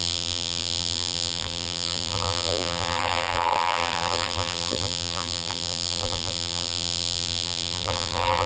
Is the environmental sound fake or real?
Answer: fake